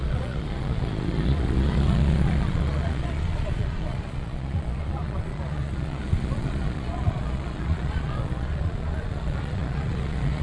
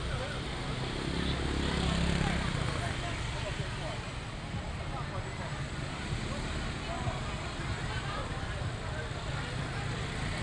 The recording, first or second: second